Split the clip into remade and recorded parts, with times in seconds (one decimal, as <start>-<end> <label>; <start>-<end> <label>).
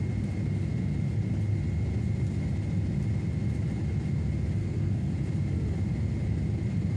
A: 0.0-4.6 recorded; 4.6-5.1 remade; 5.1-7.0 recorded